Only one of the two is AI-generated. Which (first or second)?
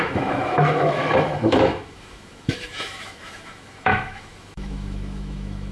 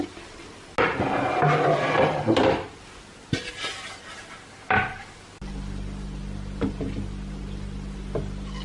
first